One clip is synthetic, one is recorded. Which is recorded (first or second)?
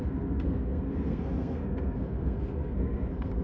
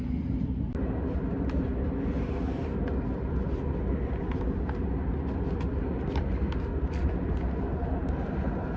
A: second